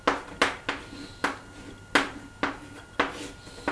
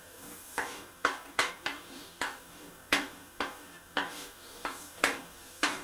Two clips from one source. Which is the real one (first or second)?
first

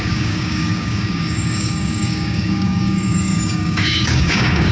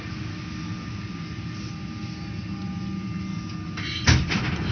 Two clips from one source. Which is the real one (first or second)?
second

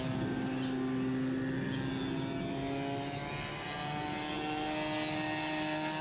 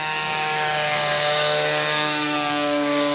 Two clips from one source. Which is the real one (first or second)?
first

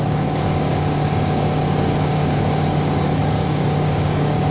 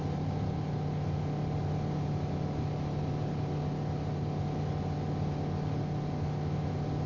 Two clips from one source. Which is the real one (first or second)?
second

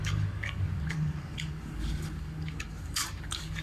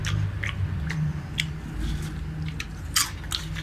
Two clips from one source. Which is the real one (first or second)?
second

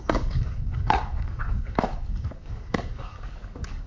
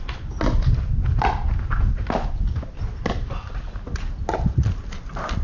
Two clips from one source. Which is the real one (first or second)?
second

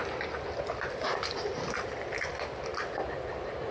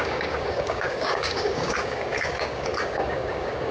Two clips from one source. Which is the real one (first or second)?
first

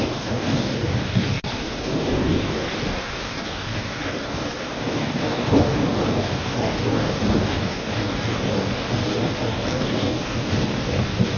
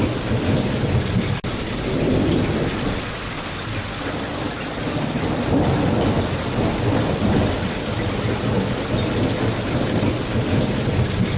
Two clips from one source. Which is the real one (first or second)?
second